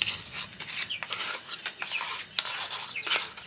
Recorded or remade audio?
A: recorded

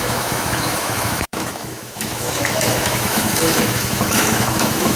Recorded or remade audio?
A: remade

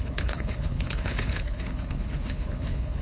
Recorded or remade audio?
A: remade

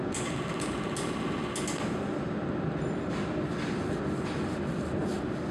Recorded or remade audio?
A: recorded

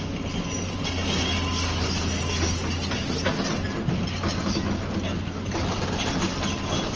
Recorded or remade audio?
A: recorded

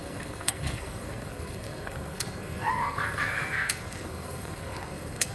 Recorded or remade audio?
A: remade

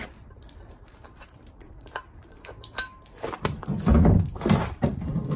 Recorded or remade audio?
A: remade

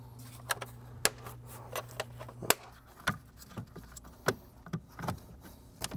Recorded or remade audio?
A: recorded